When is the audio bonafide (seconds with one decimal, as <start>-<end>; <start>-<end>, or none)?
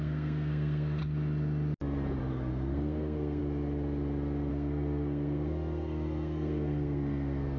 1.0-2.3; 3.4-4.5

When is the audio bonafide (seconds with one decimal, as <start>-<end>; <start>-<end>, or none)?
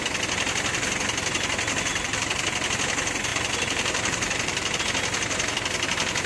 0.0-1.9; 2.4-3.3; 4.8-6.3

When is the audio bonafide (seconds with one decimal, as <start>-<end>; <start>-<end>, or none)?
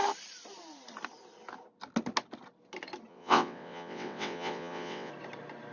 0.0-3.1; 5.1-5.7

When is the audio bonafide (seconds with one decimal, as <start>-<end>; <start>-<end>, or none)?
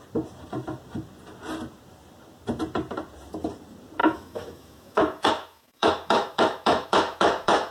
0.0-4.0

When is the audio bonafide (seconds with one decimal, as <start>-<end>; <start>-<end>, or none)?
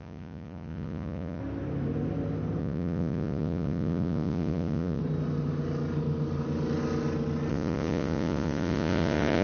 1.4-2.6; 5.0-7.5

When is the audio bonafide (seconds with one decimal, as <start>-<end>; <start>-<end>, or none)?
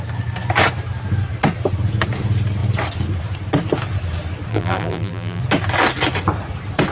0.0-4.5; 5.4-6.9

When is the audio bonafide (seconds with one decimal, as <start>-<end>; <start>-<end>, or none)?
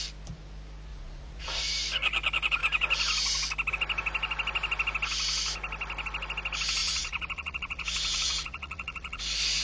0.0-0.9; 1.6-6.8; 9.2-9.6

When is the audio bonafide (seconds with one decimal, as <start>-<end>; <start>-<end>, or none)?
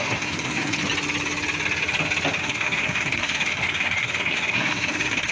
0.8-2.4